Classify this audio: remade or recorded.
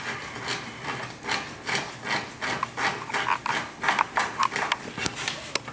recorded